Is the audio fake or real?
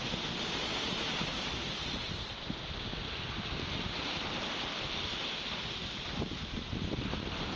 real